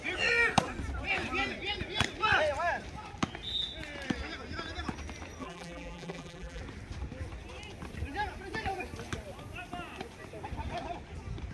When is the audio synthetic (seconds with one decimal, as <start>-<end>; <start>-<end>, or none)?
5.4-6.6